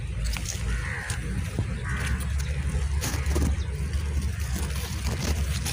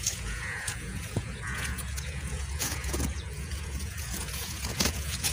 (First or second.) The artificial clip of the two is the second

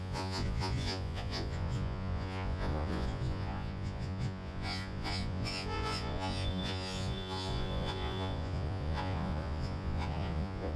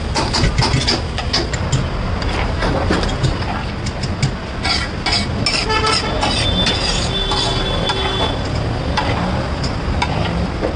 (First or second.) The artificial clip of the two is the first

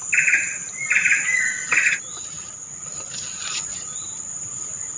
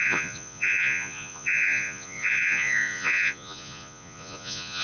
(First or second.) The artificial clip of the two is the second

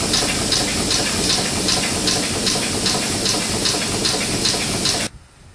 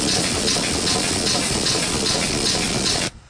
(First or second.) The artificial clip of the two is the second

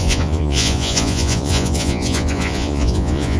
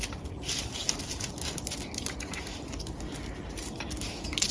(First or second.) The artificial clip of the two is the first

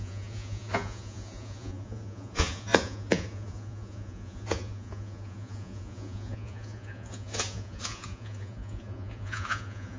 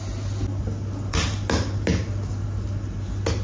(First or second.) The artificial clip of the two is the first